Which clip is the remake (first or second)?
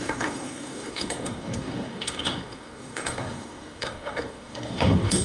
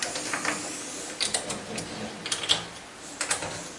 first